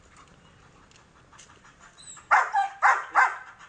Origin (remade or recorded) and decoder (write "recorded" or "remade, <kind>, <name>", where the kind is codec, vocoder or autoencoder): recorded